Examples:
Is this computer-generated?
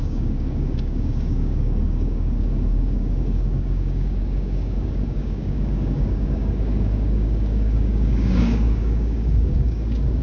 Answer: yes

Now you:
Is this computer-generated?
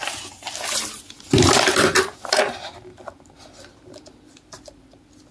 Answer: no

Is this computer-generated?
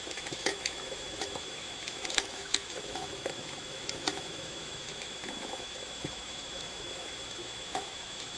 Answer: yes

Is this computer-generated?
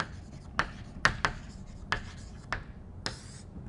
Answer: no